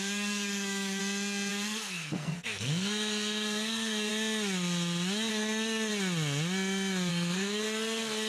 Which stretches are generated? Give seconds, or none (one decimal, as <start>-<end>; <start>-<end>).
0.0-1.0; 1.5-4.1; 5.3-5.9; 7.1-8.3